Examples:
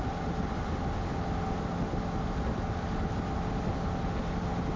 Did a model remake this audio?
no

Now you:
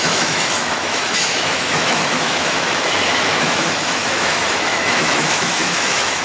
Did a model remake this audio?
yes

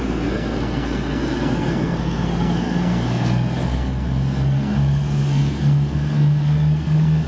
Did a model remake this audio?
yes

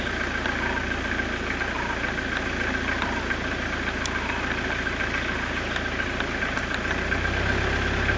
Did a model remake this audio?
no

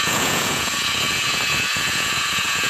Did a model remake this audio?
yes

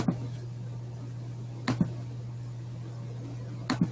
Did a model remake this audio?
no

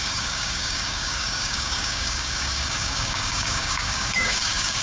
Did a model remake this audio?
yes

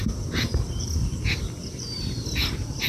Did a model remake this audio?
no